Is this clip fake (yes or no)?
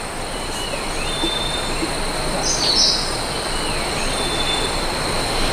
no